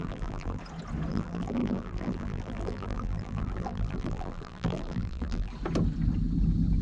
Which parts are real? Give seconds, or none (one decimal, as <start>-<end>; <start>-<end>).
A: 0.6-1.1; 5.5-6.8

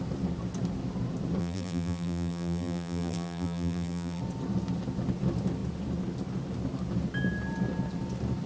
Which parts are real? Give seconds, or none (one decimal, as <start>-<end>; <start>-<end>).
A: 0.0-1.4; 4.2-8.5

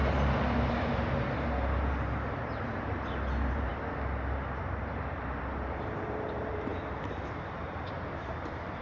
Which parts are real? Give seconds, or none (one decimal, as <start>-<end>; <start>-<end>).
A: 0.0-0.7; 3.7-4.6

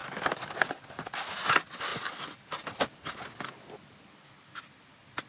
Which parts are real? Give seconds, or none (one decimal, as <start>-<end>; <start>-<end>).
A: 0.0-5.3